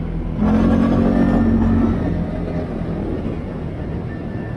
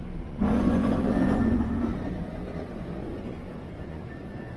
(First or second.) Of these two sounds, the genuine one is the first